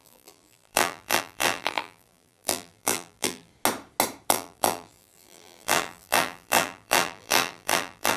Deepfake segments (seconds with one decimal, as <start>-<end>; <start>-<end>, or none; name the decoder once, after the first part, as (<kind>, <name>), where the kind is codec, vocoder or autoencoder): 0.0-3.5 (vocoder, BigVGAN v2); 4.3-8.2